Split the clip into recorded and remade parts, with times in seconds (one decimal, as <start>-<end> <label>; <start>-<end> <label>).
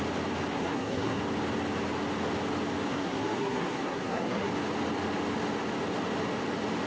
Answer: 0.0-0.5 recorded; 0.5-1.2 remade; 1.2-2.9 recorded; 2.9-4.5 remade; 4.5-6.9 recorded